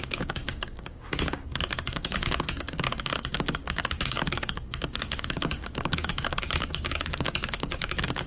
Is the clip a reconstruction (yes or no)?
yes